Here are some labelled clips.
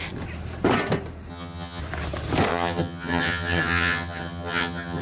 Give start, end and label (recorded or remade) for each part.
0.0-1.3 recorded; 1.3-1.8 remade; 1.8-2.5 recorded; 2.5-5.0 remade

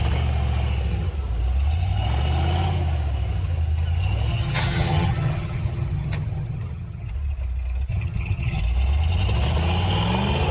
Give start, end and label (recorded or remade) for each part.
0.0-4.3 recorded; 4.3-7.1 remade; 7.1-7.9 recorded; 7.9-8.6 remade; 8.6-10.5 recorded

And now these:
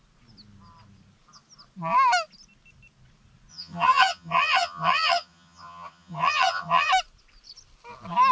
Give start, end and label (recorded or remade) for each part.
0.0-3.5 recorded; 3.5-6.9 remade; 6.9-8.3 recorded

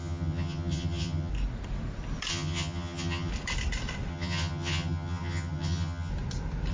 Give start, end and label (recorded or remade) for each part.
0.0-1.3 remade; 1.3-2.3 recorded; 2.3-3.3 remade; 3.3-4.1 recorded; 4.1-6.1 remade; 6.1-6.7 recorded

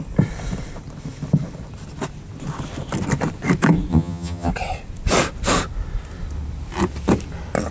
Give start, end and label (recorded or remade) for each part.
0.0-3.9 recorded; 3.9-4.5 remade; 4.5-7.7 recorded